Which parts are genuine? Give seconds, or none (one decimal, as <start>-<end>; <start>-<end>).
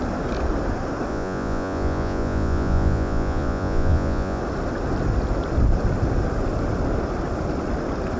0.0-1.1; 4.4-8.2